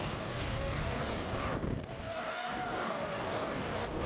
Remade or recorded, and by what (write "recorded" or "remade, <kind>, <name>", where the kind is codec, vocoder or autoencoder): remade, codec, DAC